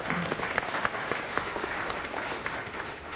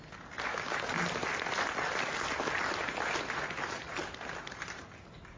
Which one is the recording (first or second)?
second